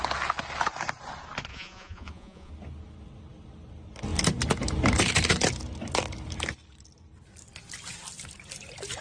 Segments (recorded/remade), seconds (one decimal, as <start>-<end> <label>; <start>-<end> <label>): 0.0-1.5 recorded; 1.5-2.5 remade; 2.5-9.0 recorded